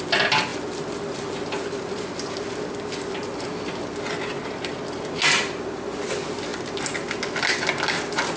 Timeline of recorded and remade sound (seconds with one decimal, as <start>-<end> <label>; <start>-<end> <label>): 0.0-8.4 recorded